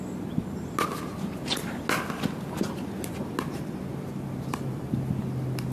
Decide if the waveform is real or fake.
real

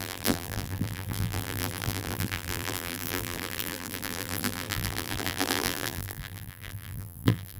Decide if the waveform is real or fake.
fake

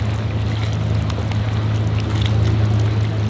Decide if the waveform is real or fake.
real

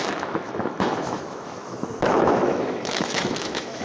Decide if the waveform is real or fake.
fake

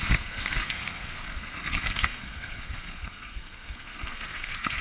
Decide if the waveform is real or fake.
fake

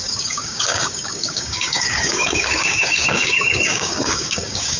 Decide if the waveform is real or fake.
fake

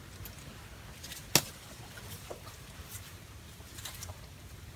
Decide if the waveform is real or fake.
real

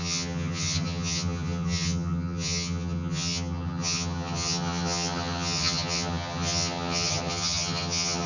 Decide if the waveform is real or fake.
fake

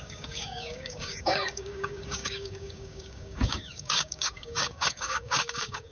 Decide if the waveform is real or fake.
fake